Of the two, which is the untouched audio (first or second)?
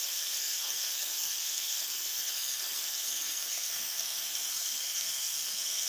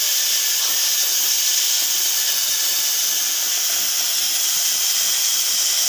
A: second